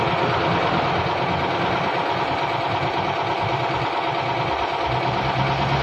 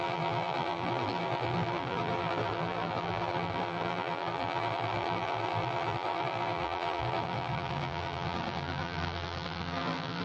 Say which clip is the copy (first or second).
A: second